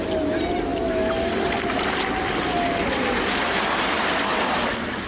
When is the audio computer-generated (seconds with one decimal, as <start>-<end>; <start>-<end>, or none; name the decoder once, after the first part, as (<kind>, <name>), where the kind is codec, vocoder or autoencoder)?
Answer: none